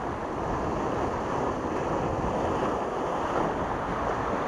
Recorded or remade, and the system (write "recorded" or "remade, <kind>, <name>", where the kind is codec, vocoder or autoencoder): recorded